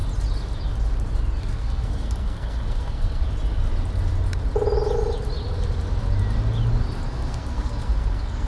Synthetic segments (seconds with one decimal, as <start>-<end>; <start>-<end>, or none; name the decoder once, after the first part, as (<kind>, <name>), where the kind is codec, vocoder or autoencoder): 1.4-3.2 (codec, SNAC); 7.1-8.5